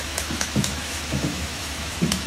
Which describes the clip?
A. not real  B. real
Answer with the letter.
A